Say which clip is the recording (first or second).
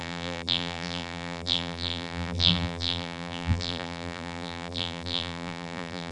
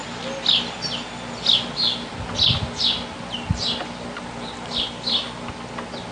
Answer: second